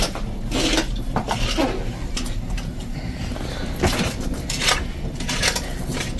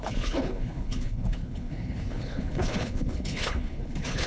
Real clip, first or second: first